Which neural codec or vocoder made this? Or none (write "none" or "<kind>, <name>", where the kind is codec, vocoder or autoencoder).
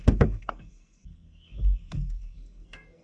codec, SNAC